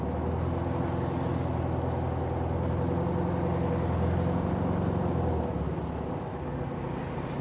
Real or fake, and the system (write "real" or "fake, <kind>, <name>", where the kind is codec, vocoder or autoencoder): real